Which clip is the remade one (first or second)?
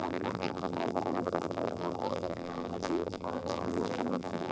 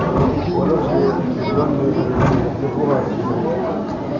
first